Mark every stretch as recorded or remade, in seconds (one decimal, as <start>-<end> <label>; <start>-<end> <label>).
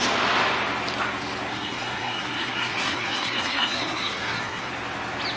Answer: 0.0-1.5 recorded; 1.5-4.7 remade; 4.7-5.4 recorded